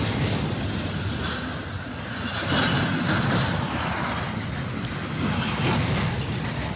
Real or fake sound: real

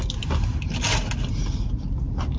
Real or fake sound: real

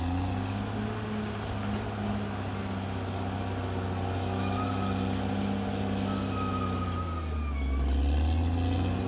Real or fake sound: real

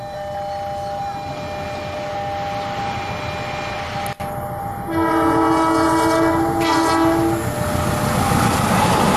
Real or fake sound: real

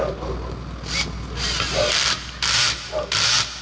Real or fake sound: real